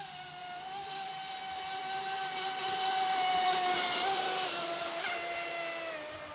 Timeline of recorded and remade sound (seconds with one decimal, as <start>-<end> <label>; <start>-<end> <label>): 0.0-0.4 recorded; 0.4-1.4 remade; 1.4-2.6 recorded; 2.6-4.8 remade; 4.8-6.3 recorded